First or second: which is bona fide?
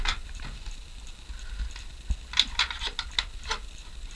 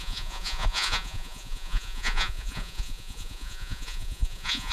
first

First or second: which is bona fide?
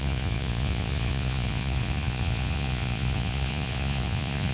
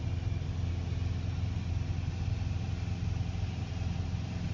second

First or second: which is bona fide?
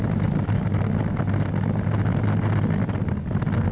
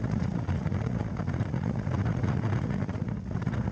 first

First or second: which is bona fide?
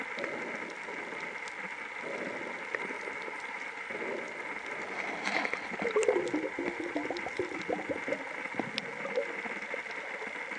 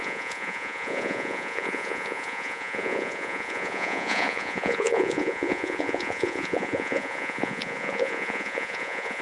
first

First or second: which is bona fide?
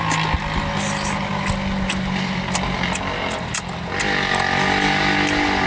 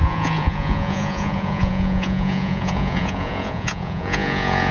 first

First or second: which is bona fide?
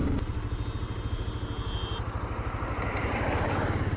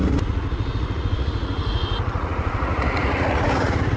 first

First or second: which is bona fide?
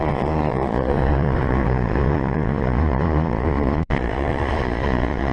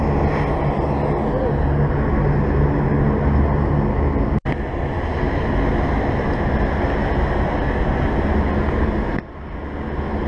second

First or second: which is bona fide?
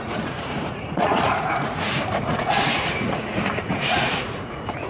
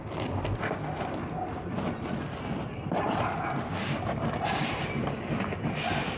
second